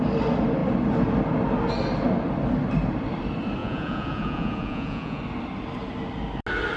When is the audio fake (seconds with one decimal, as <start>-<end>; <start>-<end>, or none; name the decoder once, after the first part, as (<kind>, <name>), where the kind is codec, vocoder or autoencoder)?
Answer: 3.6-5.2 (vocoder, Vocos)